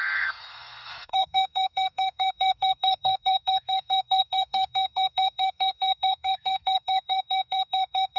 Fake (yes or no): yes